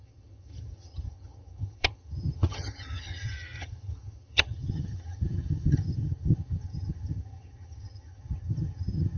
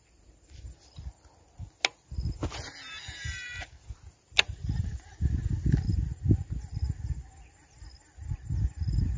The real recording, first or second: second